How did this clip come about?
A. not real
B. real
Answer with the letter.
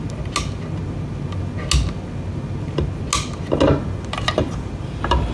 B